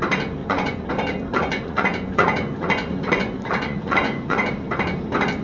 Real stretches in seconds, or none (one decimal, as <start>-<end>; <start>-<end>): 0.0-0.4; 0.9-1.3; 4.5-5.4